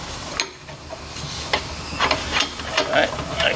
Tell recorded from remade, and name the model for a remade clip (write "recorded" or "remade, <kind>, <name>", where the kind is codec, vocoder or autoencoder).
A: recorded